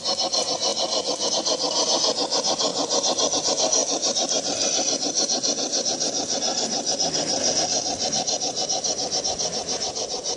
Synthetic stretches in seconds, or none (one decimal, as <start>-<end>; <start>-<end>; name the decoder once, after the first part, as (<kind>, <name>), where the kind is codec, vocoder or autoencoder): 3.8-9.1 (vocoder, BigVGAN v2)